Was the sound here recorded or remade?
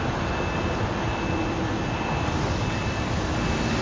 recorded